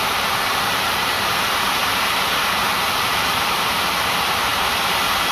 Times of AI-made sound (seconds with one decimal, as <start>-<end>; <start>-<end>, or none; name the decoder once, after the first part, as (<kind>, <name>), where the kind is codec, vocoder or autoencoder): 0.0-4.5 (vocoder, BigVGAN v2)